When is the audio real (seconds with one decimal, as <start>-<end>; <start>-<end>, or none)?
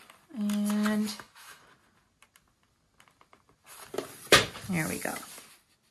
0.0-1.1; 1.6-5.9